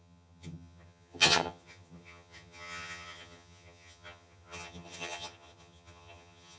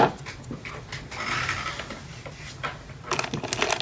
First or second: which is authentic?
second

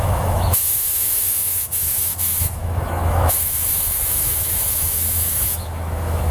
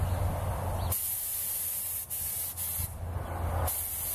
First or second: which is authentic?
second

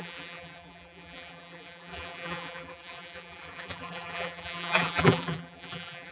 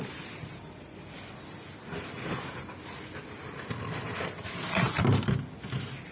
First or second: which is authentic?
second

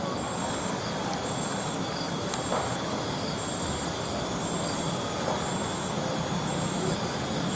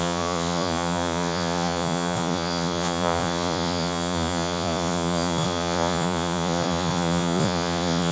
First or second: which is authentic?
first